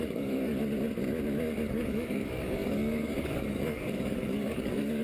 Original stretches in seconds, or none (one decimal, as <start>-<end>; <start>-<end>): 0.6-1.7